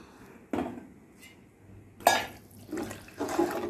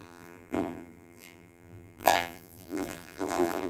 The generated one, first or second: second